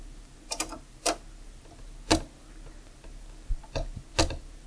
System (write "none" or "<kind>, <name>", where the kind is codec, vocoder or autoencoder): none